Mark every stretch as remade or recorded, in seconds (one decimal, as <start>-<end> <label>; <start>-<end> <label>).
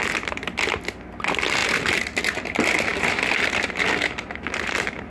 0.0-5.1 recorded